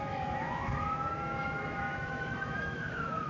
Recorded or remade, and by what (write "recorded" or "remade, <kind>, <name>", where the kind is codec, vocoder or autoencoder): remade, autoencoder, DAC-VAE